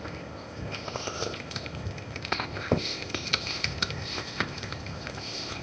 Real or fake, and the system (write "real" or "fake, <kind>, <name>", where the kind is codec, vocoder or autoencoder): fake, codec, ZipCodec